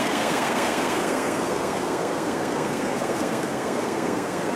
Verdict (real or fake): fake